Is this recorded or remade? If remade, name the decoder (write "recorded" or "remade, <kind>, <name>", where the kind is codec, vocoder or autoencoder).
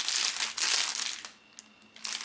recorded